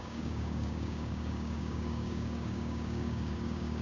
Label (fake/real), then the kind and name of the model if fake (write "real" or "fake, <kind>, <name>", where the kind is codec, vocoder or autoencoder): fake, codec, DAC